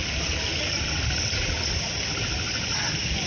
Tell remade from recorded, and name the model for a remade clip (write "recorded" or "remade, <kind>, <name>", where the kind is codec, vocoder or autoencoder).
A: recorded